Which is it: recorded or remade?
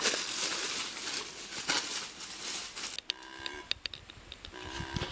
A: recorded